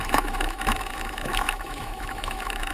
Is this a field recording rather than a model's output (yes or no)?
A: no